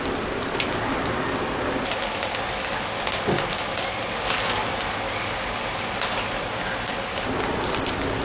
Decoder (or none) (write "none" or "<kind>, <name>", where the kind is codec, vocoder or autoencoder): none